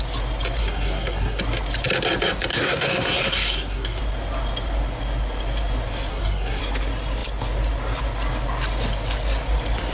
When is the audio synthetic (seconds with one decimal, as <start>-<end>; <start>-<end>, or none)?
0.6-1.4; 2.5-4.0; 6.1-6.6